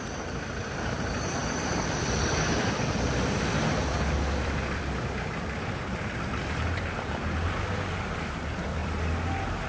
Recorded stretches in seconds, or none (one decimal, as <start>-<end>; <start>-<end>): 8.8-9.7